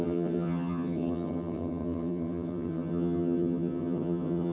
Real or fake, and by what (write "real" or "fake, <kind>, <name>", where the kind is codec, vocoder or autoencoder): fake, vocoder, HiFi-GAN